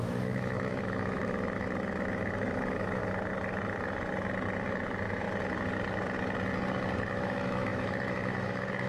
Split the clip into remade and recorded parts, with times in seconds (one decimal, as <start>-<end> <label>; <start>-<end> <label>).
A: 0.0-3.0 remade; 3.0-7.1 recorded; 7.1-8.9 remade